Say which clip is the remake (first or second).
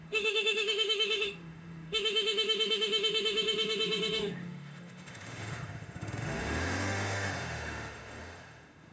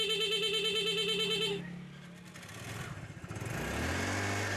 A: first